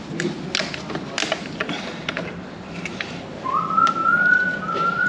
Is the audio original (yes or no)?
yes